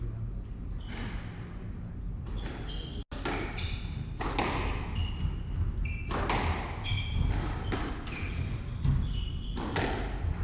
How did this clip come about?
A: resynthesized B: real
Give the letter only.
B